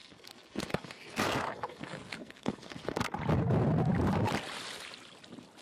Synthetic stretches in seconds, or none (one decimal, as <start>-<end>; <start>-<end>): 0.0-3.2